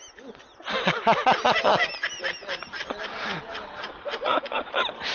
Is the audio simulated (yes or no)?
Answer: no